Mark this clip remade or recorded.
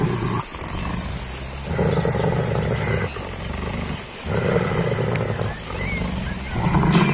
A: recorded